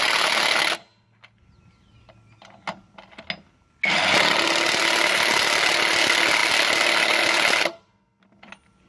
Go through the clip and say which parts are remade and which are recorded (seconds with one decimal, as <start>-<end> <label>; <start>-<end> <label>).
0.0-8.9 recorded